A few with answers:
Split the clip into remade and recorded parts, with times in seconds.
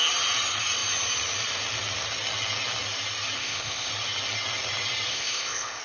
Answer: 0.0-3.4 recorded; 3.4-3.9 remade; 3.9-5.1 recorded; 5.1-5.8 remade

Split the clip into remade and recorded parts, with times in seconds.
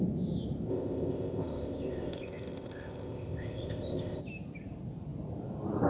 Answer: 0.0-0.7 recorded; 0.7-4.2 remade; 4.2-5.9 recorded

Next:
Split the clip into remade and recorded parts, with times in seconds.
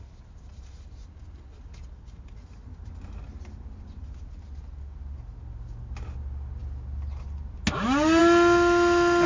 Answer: 0.0-9.3 recorded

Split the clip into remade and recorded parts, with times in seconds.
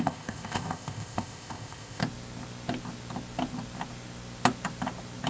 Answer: 0.0-2.0 remade; 2.0-5.3 recorded